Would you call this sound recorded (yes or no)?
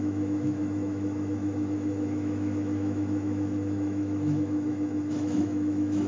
no